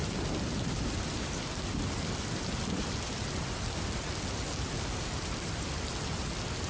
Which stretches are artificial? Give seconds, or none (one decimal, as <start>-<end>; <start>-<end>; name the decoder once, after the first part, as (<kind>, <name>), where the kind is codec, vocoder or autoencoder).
none

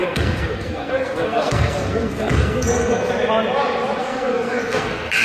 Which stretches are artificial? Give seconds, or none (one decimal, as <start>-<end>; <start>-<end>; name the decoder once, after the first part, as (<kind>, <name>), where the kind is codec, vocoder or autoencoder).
0.0-3.1 (codec, SNAC); 4.0-5.2

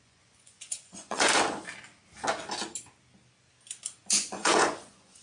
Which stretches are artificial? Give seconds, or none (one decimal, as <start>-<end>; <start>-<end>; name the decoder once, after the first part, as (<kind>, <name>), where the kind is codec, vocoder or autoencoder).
0.0-1.3 (vocoder, Vocos); 4.1-5.2

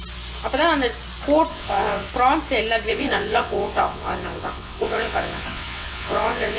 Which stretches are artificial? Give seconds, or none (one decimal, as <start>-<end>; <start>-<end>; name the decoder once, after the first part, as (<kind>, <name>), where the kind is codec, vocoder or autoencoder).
1.5-2.1 (vocoder, WaveNeXt); 2.9-6.6

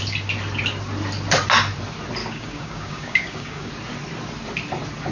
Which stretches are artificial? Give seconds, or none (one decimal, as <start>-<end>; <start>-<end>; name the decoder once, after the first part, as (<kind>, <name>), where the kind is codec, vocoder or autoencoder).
2.2-3.7 (codec, DAC)

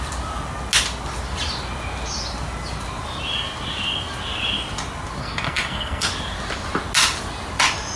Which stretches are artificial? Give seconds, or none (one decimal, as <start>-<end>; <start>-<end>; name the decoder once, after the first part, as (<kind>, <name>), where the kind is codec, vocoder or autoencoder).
5.2-6.1 (codec, SNAC)

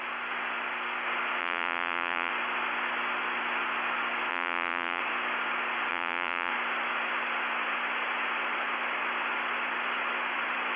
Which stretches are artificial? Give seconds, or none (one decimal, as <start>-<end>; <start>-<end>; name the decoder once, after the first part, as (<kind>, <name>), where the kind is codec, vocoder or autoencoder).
1.4-2.3 (vocoder, Vocos); 4.3-5.0; 5.9-6.5

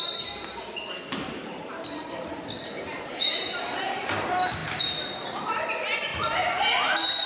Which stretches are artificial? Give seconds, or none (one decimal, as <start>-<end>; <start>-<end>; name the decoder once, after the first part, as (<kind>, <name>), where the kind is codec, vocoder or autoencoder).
0.0-6.1 (vocoder, BigVGAN v2)